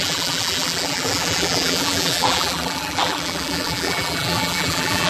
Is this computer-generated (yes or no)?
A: yes